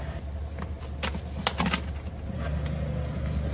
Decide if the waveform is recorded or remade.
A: recorded